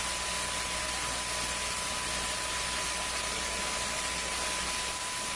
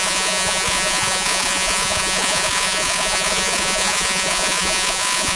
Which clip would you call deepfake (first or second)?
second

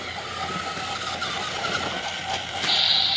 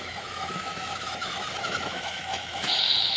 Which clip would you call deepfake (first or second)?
second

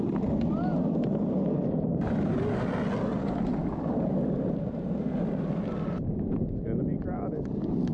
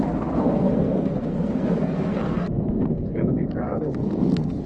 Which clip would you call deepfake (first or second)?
second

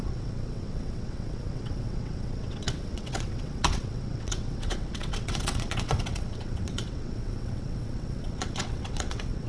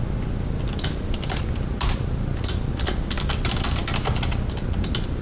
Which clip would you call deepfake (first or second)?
first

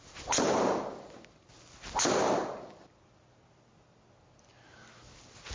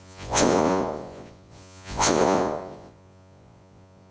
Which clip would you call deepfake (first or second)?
second